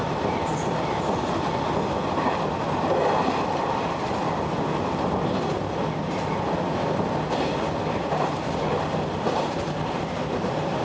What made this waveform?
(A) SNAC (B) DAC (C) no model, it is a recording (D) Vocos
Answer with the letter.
C